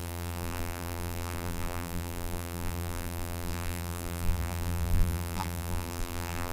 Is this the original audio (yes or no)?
no